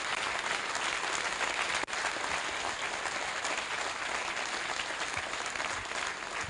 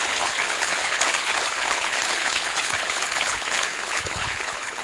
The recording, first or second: first